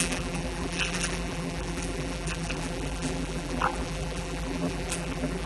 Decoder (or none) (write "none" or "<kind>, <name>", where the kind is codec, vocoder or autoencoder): vocoder, BigVGAN v2